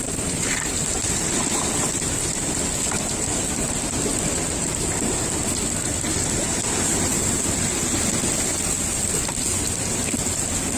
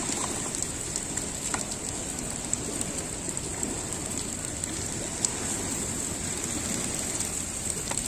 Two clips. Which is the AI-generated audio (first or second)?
second